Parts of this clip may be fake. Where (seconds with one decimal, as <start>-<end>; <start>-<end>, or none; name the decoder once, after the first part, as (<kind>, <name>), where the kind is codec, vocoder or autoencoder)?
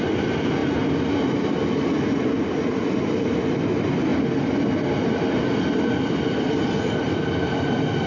none